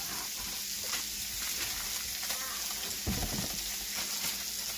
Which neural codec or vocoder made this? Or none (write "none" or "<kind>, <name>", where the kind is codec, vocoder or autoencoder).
none